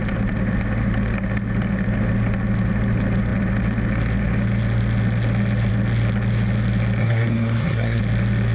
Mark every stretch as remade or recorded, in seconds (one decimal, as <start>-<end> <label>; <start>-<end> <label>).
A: 0.0-7.0 recorded; 7.0-8.0 remade; 8.0-8.5 recorded